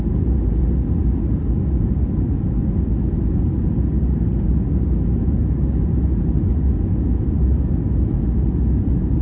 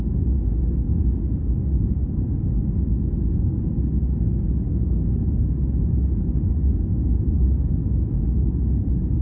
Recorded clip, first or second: first